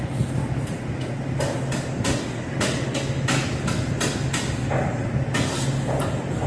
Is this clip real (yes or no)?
yes